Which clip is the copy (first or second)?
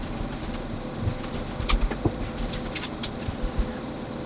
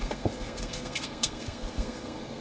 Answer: second